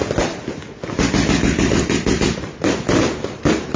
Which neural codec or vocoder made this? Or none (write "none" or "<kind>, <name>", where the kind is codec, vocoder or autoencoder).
none